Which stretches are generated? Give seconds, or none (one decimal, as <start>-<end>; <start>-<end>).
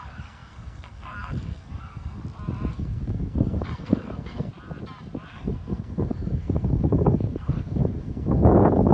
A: 0.0-2.2; 2.7-4.5; 5.3-8.9